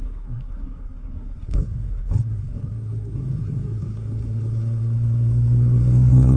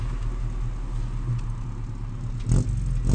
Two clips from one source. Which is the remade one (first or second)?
first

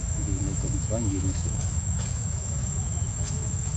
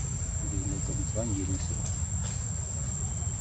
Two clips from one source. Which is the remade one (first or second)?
first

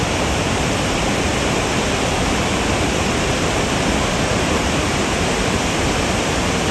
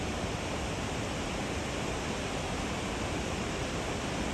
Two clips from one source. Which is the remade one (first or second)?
first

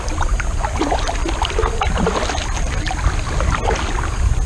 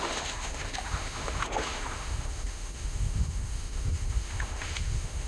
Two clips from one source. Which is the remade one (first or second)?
second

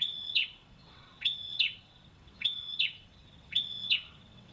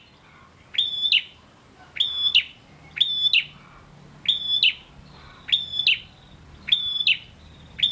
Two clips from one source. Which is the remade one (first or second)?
first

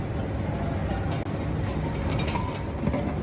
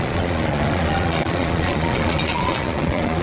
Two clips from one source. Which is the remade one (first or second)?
second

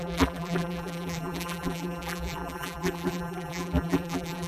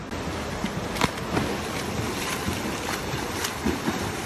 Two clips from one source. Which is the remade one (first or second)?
first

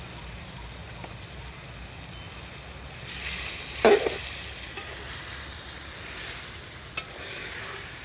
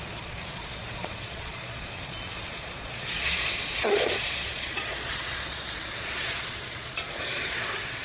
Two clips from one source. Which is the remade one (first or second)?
second